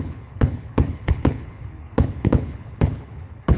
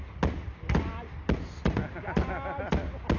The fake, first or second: first